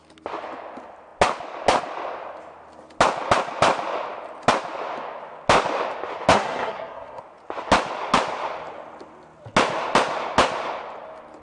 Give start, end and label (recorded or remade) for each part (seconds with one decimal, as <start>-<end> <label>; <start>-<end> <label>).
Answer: 0.0-6.3 recorded; 6.3-7.2 remade; 7.2-11.4 recorded